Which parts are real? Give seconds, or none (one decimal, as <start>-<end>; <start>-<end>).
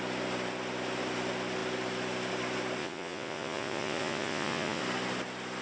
0.0-2.8; 4.8-5.6